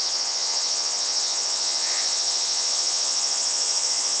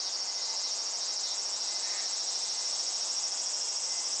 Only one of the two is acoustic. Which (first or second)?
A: second